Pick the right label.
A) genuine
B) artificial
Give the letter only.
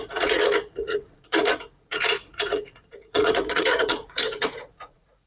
B